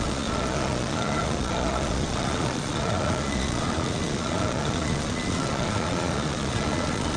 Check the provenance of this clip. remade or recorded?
remade